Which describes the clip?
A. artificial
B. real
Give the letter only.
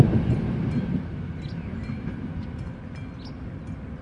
B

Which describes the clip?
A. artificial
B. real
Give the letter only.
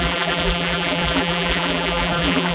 A